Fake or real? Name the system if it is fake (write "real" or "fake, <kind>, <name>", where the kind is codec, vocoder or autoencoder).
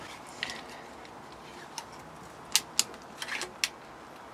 real